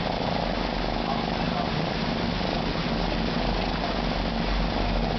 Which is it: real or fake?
real